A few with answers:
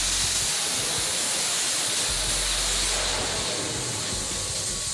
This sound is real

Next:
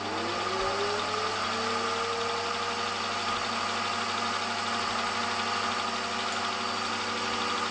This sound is real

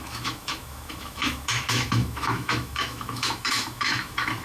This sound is fake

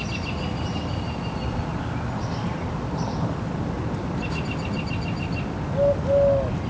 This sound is real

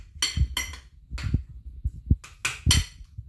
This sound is real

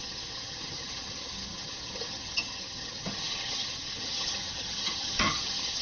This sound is fake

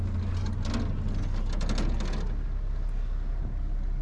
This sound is real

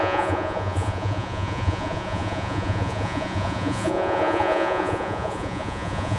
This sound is fake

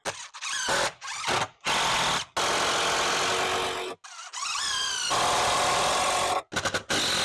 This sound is real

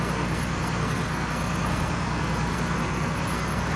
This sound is fake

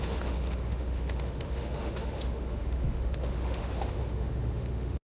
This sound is fake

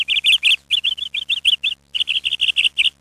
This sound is real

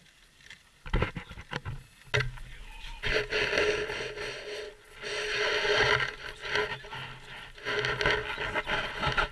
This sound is real